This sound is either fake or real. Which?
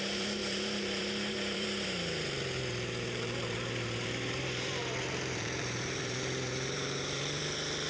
fake